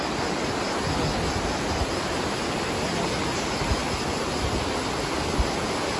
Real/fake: real